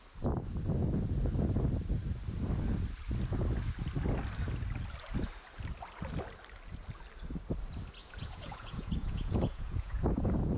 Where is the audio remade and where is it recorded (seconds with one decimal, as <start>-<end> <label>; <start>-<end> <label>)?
0.0-8.0 recorded; 8.0-10.6 remade